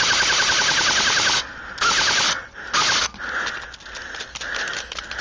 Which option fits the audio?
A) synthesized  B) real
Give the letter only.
B